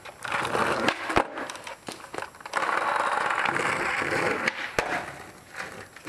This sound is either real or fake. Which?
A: real